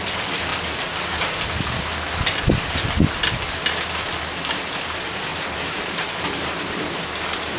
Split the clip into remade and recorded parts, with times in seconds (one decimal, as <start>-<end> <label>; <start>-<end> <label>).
0.0-5.3 recorded; 5.3-7.6 remade